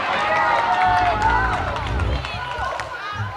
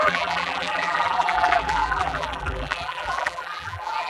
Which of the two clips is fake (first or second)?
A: second